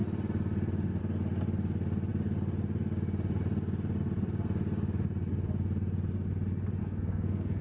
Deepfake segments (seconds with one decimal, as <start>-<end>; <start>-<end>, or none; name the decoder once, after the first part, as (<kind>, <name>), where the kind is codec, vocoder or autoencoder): 6.8-7.6 (codec, SNAC)